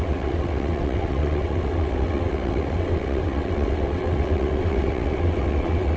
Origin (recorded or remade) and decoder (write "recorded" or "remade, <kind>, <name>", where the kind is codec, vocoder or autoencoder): remade, vocoder, WaveNeXt